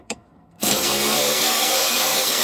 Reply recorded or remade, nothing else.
remade